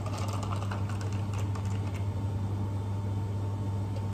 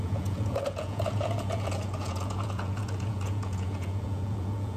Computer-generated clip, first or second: second